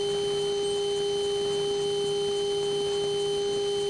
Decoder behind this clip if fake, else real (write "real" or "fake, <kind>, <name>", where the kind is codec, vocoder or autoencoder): real